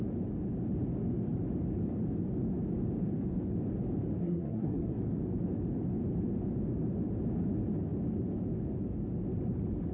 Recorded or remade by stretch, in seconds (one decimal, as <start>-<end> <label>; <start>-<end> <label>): 0.0-4.2 recorded; 4.2-5.0 remade; 5.0-9.9 recorded

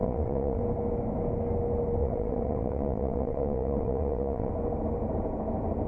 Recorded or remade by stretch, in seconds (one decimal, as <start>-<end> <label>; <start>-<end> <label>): 0.0-0.6 remade; 0.6-2.0 recorded; 2.0-4.5 remade; 4.5-5.9 recorded

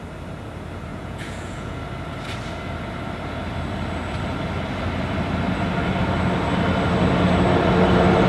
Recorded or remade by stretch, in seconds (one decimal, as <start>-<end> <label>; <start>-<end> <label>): 0.0-0.9 recorded; 0.9-1.8 remade; 1.8-8.3 recorded

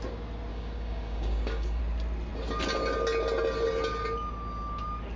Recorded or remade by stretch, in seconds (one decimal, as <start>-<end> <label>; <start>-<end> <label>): 0.0-0.5 recorded; 0.5-1.8 remade; 1.8-5.2 recorded

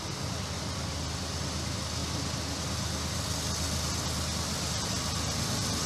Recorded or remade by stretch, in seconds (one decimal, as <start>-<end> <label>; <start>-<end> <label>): 0.0-5.9 recorded

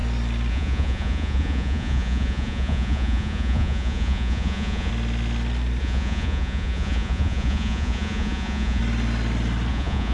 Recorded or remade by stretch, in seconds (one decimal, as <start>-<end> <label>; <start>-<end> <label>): 0.0-0.5 recorded; 0.5-4.9 remade; 4.9-5.8 recorded; 5.8-8.8 remade; 8.8-9.7 recorded; 9.7-10.1 remade